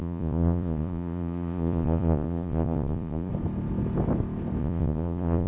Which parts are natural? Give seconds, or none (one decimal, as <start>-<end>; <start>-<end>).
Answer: 3.3-4.6